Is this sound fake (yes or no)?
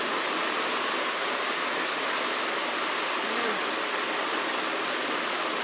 no